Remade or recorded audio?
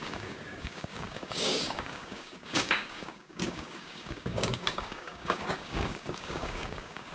remade